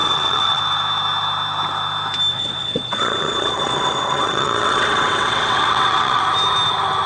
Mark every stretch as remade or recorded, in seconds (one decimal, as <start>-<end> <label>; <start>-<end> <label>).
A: 0.0-0.6 remade; 0.6-2.3 recorded; 2.3-6.2 remade; 6.2-7.1 recorded

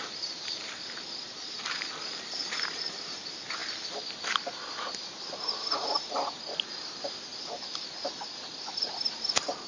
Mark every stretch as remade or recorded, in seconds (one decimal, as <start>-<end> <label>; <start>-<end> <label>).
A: 0.0-3.6 remade; 3.6-8.5 recorded; 8.5-9.7 remade

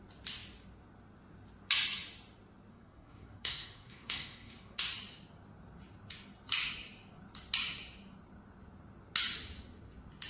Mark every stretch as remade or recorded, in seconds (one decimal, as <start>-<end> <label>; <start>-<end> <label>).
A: 0.0-2.7 recorded; 2.7-4.9 remade; 4.9-10.3 recorded

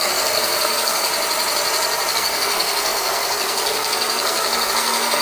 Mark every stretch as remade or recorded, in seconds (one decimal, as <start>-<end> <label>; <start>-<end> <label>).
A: 0.0-1.1 remade; 1.1-2.1 recorded; 2.1-5.2 remade

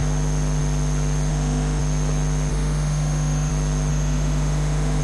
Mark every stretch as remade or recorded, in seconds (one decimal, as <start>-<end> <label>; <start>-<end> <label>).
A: 0.0-1.3 recorded; 1.3-1.8 remade; 1.8-2.5 recorded; 2.5-3.5 remade; 3.5-3.9 recorded; 3.9-5.0 remade

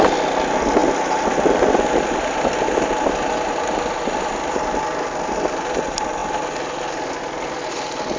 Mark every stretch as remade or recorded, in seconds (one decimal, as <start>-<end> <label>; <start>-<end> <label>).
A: 0.0-8.2 recorded

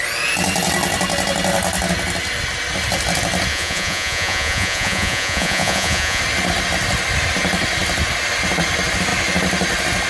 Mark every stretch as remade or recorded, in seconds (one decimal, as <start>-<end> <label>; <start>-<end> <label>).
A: 0.0-3.5 recorded; 3.5-6.2 remade; 6.2-10.1 recorded